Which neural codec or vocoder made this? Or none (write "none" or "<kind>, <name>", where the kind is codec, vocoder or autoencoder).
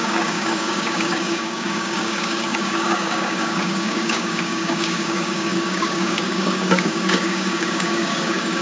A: codec, DAC